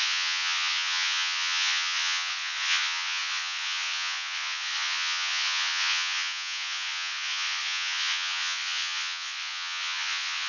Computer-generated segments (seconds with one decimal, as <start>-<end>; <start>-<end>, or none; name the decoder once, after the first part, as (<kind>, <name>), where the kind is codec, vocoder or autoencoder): 0.0-10.5 (vocoder, Vocos)